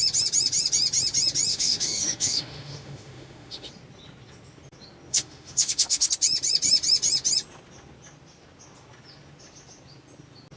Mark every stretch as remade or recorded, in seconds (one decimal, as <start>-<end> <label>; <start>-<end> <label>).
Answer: 0.0-1.5 recorded; 1.5-3.7 remade; 3.7-5.1 recorded; 5.1-6.1 remade; 6.1-10.6 recorded